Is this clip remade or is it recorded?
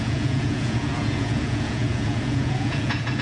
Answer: remade